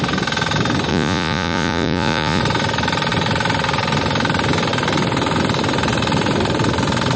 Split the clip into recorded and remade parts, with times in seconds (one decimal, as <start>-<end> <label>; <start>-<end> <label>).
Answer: 0.0-0.9 recorded; 0.9-2.4 remade; 2.4-7.2 recorded